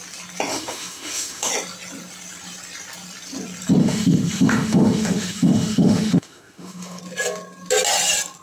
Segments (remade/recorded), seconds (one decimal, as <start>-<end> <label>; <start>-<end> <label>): 0.0-0.5 recorded; 0.5-1.5 remade; 1.5-3.8 recorded; 3.8-7.0 remade; 7.0-8.4 recorded